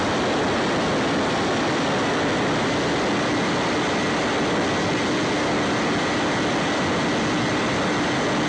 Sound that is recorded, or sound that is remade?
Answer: recorded